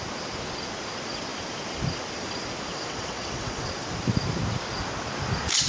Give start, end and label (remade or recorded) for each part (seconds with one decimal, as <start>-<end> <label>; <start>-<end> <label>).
0.0-2.7 recorded; 2.7-3.7 remade; 3.7-5.7 recorded